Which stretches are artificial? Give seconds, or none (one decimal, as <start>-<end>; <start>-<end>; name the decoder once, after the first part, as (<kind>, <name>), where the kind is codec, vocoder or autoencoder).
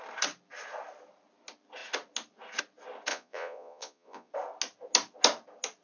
3.1-4.3 (vocoder, Vocos)